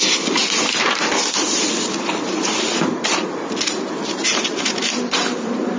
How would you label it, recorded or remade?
recorded